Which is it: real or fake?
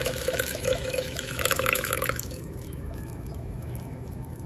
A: fake